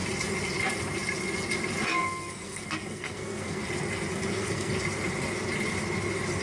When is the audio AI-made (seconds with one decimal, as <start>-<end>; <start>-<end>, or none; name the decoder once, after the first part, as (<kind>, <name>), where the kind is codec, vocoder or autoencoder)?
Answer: 1.9-3.6 (codec, SNAC); 4.1-4.7